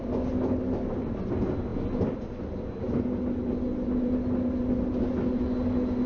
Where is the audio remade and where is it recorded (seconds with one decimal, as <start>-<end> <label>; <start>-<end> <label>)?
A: 0.0-6.1 recorded